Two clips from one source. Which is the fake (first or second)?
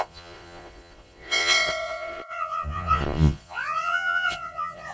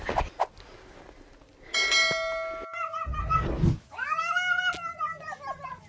first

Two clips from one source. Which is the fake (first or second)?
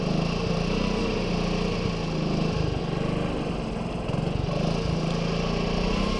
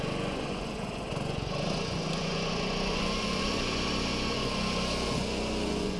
second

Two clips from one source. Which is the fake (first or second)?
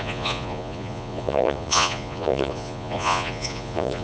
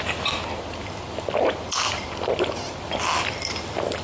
first